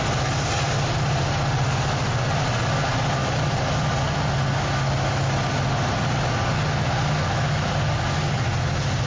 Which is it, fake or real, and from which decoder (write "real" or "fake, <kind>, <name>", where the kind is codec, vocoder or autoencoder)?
real